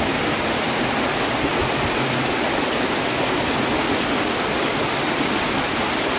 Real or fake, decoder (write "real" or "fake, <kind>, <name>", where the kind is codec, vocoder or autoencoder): real